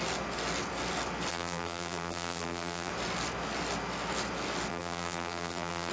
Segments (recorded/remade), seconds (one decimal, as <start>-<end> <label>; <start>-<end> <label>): 0.0-1.3 recorded; 1.3-2.9 remade; 2.9-4.7 recorded; 4.7-5.9 remade